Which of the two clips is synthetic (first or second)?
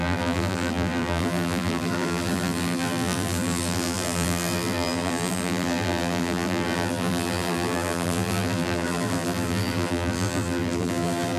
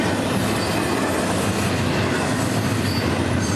first